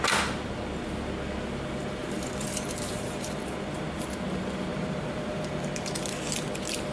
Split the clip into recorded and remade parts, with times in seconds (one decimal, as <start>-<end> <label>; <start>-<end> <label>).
0.0-2.0 recorded; 2.0-3.4 remade; 3.4-4.7 recorded; 4.7-5.7 remade; 5.7-6.9 recorded

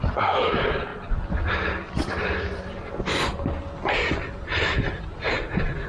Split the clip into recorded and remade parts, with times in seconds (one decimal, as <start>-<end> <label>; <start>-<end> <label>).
0.0-5.9 recorded

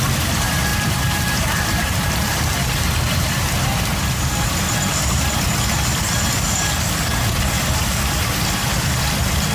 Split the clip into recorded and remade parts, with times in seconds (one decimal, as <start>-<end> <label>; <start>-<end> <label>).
0.0-0.7 recorded; 0.7-5.4 remade; 5.4-9.5 recorded

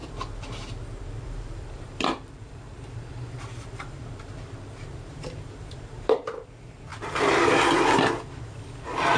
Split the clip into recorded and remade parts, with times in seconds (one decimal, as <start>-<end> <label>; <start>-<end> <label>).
0.0-6.9 remade; 6.9-9.2 recorded